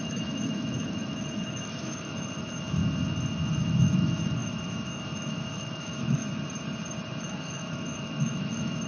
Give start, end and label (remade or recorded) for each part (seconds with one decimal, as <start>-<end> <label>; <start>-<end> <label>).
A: 0.0-2.8 remade; 2.8-3.6 recorded; 3.6-6.2 remade; 6.2-7.2 recorded; 7.2-8.9 remade